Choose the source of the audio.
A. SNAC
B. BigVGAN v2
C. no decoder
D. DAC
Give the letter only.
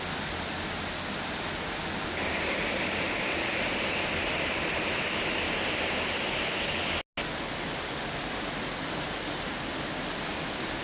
C